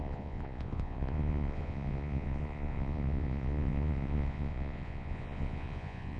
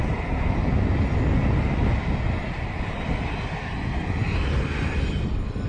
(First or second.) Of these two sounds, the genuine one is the second